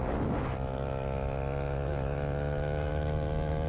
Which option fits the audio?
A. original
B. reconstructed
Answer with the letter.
A